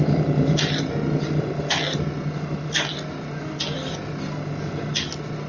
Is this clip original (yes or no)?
yes